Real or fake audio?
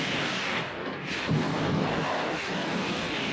fake